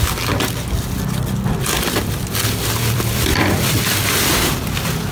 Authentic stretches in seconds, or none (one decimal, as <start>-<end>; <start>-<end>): 0.0-1.7; 4.1-5.1